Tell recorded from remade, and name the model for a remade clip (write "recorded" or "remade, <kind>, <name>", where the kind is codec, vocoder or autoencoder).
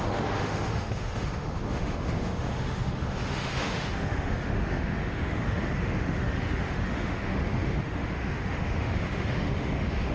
remade, autoencoder, DAC-VAE